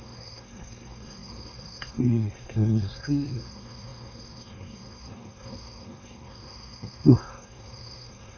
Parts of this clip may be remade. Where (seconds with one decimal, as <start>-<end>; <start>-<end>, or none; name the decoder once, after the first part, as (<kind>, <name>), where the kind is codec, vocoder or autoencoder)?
0.0-8.4 (codec, SNAC)